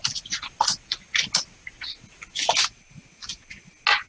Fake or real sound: real